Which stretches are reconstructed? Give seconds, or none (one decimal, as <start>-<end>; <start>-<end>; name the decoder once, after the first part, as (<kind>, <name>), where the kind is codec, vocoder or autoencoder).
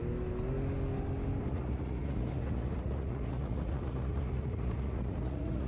1.5-5.7 (vocoder, Vocos)